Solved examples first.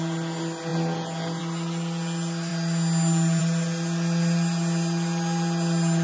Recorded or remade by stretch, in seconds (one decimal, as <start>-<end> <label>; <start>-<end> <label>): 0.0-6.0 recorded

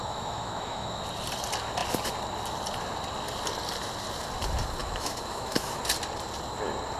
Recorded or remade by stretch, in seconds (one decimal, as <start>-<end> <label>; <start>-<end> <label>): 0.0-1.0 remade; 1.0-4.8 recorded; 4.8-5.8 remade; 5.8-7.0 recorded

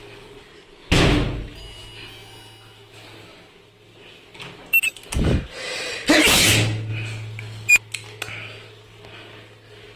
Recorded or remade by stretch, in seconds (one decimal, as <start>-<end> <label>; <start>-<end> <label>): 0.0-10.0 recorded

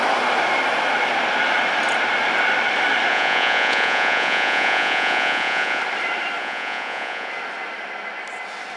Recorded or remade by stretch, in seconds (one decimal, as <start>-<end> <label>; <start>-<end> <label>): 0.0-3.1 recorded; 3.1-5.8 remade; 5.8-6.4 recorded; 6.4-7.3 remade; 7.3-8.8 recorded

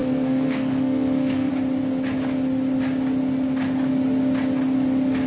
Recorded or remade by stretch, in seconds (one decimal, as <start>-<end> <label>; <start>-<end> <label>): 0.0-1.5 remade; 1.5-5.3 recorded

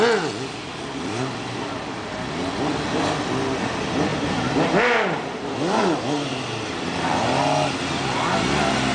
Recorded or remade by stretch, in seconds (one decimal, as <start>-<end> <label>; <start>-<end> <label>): 0.0-0.6 recorded; 0.6-1.7 remade; 1.7-4.1 recorded; 4.1-5.8 remade; 5.8-8.9 recorded

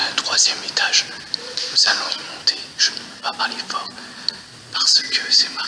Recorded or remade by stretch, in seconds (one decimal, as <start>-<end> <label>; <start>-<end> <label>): 0.0-5.7 recorded

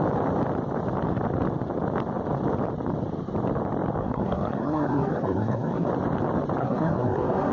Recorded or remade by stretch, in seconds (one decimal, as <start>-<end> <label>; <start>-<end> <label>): 0.0-4.0 recorded; 4.0-5.9 remade; 5.9-6.6 recorded; 6.6-7.5 remade